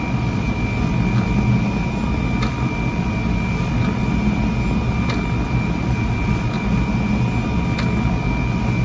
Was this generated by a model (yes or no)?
no